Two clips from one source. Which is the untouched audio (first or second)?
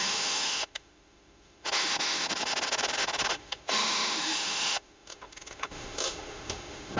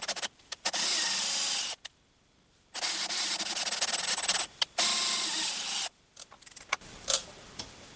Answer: second